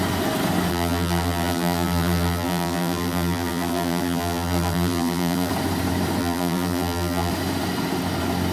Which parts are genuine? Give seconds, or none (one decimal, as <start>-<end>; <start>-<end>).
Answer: 0.0-0.7; 5.5-6.2; 7.3-8.5